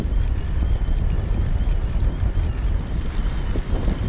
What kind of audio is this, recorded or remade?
recorded